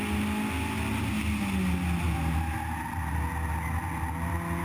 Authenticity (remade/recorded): recorded